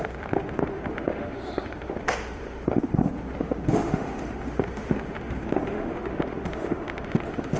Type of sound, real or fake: fake